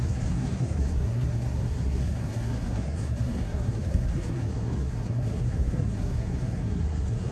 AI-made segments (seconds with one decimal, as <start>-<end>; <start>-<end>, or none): 0.0-7.3